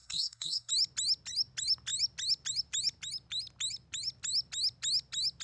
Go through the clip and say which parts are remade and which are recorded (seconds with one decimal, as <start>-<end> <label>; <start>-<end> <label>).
0.0-0.7 remade; 0.7-5.4 recorded